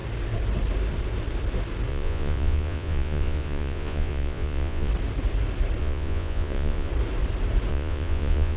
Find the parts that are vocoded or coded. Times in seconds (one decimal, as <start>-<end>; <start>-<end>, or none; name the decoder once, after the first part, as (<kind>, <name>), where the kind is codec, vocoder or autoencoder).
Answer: 1.9-4.9 (vocoder, Vocos); 5.8-6.9; 7.7-8.6